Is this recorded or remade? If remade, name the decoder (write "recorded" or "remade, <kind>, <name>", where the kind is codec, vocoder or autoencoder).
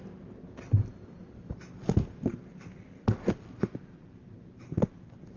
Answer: recorded